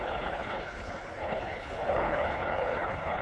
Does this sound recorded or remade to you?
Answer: remade